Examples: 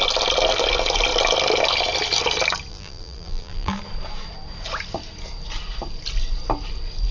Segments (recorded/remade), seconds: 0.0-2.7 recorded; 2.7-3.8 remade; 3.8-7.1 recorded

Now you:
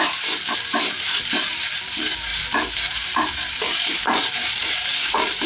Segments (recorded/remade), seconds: 0.0-5.5 remade

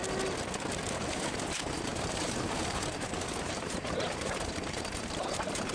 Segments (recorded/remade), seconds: 0.0-1.1 recorded; 1.1-5.7 remade